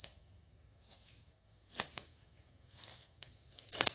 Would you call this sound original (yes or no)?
no